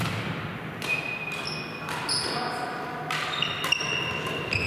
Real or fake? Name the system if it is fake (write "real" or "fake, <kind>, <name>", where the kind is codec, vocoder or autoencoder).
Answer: real